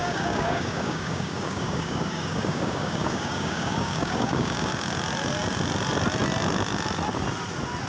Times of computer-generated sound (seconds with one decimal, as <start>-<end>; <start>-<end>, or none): 0.0-4.7